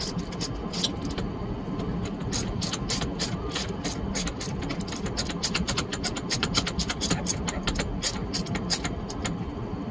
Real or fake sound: real